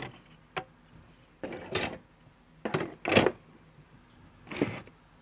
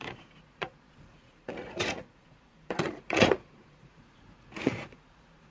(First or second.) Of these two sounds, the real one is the first